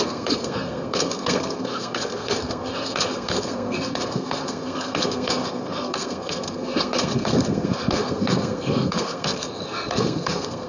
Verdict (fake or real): fake